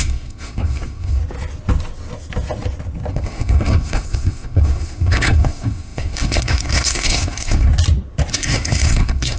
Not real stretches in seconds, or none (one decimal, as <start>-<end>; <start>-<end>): 0.0-1.2; 3.1-7.7; 8.3-9.4